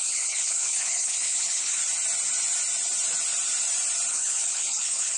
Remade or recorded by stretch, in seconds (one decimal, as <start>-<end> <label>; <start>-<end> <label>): 0.0-1.8 remade; 1.8-4.1 recorded; 4.1-5.2 remade